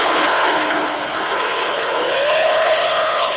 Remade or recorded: remade